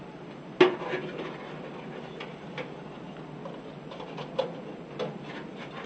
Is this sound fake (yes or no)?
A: no